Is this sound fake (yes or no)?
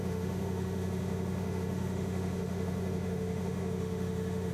yes